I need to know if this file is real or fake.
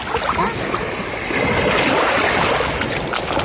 real